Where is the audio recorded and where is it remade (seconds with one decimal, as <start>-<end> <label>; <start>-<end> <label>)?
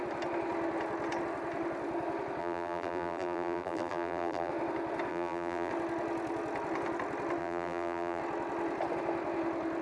0.0-2.4 recorded; 2.4-4.5 remade; 4.5-5.1 recorded; 5.1-5.7 remade; 5.7-7.4 recorded; 7.4-8.2 remade; 8.2-9.8 recorded